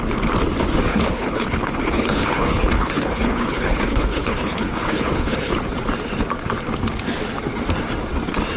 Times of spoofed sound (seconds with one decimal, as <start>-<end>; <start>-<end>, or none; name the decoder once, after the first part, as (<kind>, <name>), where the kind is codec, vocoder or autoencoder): 0.9-5.5 (codec, HILCodec)